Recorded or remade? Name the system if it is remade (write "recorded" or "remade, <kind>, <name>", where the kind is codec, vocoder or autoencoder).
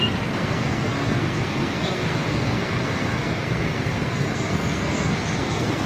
remade, codec, SNAC